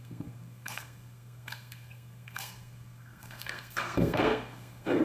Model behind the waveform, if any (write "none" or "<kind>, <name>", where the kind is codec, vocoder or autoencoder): codec, SNAC